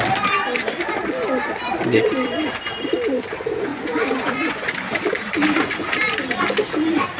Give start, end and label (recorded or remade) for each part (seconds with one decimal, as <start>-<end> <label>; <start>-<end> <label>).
0.0-3.7 recorded; 3.7-4.9 remade; 4.9-7.2 recorded